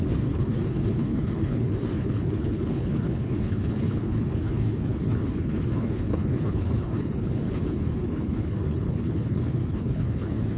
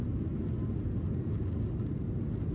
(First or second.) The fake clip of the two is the first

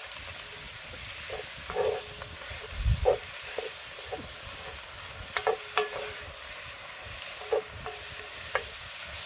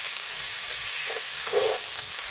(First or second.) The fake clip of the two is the second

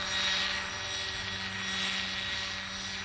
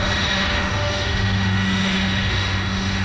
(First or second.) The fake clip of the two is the second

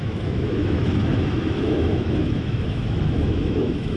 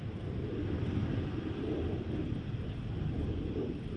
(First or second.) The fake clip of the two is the first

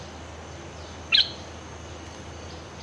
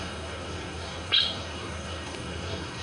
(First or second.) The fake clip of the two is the second